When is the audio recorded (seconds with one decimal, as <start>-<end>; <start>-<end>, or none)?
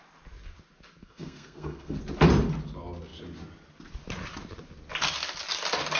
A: 0.0-1.0; 2.0-6.0